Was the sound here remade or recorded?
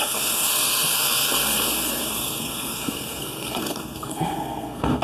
remade